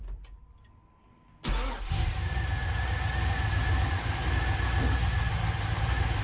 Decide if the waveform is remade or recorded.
recorded